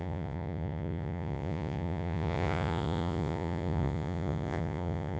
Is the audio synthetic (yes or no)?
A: yes